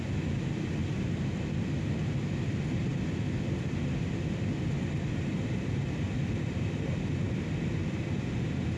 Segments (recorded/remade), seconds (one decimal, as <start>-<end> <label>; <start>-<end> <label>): 0.0-8.8 recorded